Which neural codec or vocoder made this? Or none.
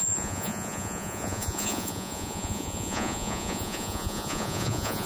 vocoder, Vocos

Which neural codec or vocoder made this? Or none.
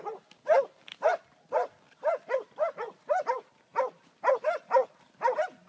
none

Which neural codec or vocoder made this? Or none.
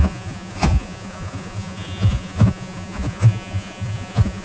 vocoder, Vocos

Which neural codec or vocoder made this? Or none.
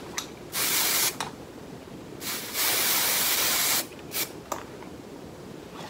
none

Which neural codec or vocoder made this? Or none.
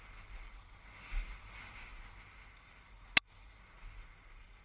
none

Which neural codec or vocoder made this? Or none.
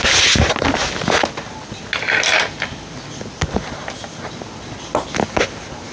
none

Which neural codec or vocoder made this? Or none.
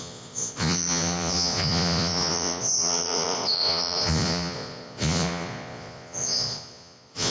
vocoder, Vocos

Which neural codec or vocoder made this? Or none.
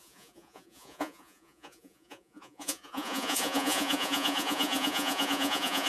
vocoder, Vocos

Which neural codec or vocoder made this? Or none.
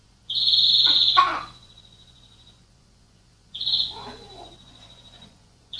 vocoder, Vocos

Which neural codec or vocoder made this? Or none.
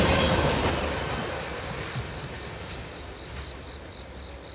none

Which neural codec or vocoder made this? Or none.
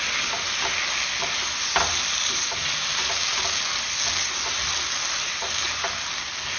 none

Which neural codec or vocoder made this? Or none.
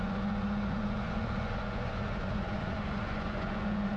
vocoder, Vocos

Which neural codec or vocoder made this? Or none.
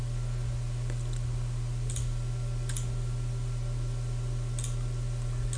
none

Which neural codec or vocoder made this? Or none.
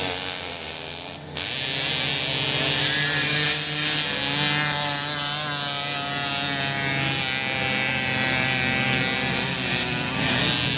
none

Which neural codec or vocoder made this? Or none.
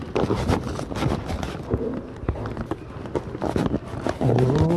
none